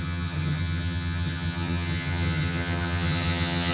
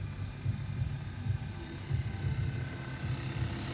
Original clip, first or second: second